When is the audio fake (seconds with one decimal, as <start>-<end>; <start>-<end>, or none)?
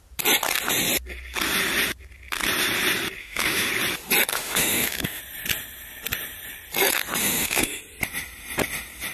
3.2-3.7; 4.3-5.2; 7.2-7.8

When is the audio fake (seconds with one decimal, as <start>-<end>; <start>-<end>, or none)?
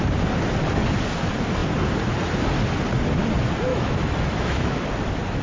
3.7-4.9